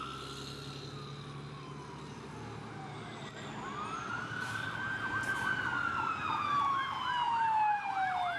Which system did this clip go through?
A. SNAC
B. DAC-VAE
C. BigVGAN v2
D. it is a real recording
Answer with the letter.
D